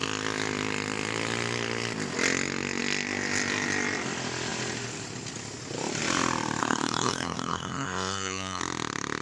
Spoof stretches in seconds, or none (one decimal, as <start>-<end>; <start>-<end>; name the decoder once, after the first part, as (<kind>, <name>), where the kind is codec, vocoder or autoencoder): 6.6-8.6 (codec, SNAC)